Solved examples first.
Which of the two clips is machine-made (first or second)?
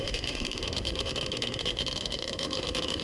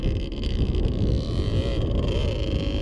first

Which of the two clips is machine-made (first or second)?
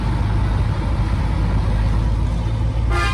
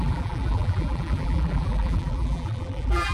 second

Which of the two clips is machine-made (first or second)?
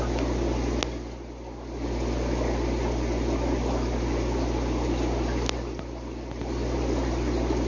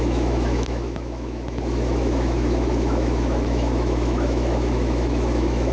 second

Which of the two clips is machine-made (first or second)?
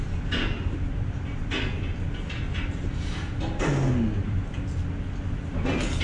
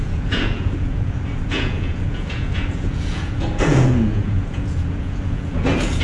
second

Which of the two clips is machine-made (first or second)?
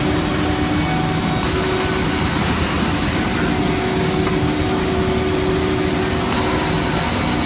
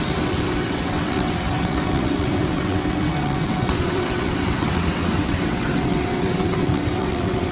second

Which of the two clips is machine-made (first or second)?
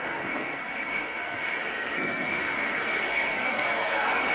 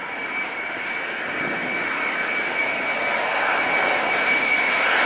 first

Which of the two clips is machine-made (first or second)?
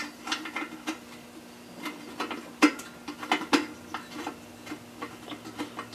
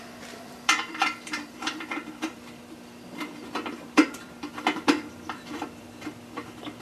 second